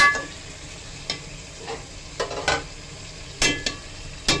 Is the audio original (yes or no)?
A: yes